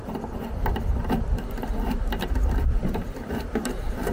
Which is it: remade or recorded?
remade